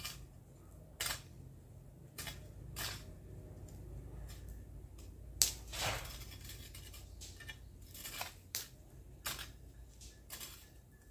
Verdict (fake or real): real